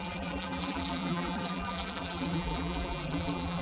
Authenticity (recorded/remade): remade